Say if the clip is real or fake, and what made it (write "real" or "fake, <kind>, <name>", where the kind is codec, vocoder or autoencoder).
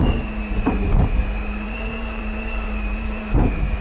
fake, vocoder, BigVGAN v2